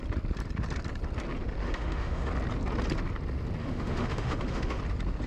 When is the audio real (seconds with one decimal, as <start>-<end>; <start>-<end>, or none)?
0.0-1.6; 2.3-3.6; 4.8-5.3

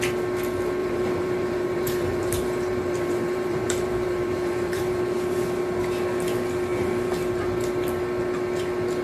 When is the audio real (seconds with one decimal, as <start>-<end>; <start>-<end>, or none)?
0.0-0.8; 5.0-9.0

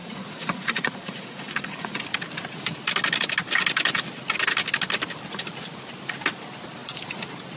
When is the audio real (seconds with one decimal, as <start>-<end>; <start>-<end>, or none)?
2.0-7.6

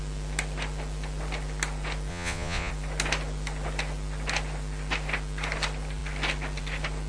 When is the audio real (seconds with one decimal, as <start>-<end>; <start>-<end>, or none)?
0.0-2.1; 2.7-7.1

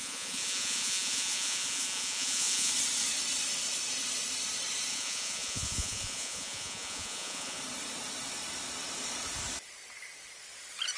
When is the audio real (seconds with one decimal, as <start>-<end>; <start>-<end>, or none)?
2.7-4.9; 7.6-11.0